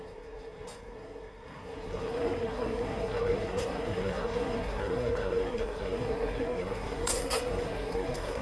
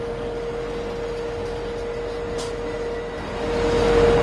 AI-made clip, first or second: first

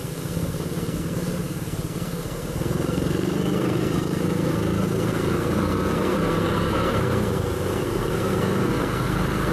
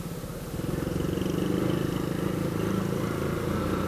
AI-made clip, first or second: first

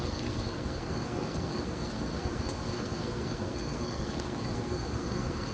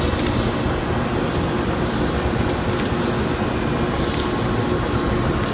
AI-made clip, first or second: first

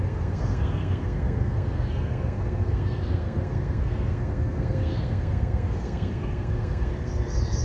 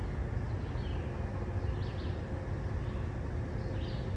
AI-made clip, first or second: first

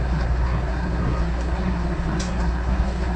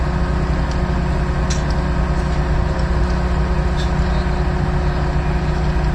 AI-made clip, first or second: first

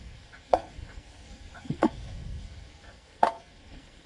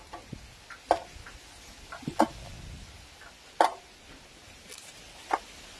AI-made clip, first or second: first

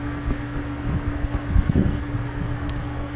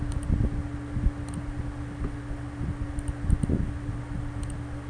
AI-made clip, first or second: first